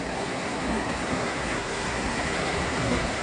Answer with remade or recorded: remade